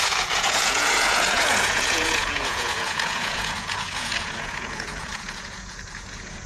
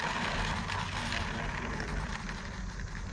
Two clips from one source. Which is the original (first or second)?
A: second